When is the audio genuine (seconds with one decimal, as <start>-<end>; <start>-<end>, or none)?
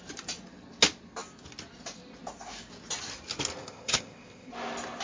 0.0-3.6; 4.5-5.0